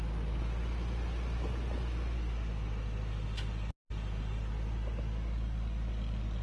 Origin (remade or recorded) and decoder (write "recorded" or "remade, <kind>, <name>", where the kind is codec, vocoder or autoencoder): recorded